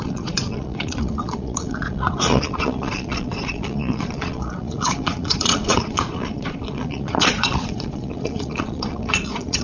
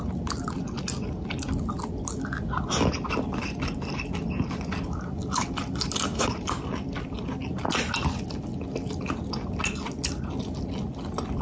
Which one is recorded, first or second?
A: second